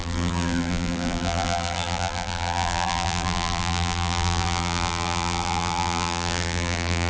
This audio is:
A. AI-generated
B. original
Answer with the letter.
A